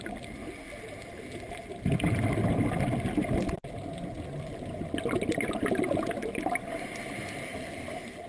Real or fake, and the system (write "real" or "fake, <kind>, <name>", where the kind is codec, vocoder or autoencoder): real